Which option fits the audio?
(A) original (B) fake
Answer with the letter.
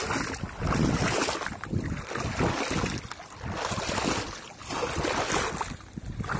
A